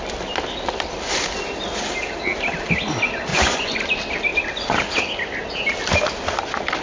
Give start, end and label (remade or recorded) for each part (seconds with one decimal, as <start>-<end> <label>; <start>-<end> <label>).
0.0-3.3 recorded; 3.3-3.8 remade; 3.8-6.8 recorded